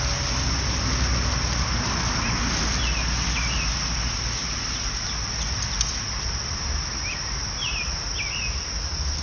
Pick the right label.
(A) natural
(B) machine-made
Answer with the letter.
A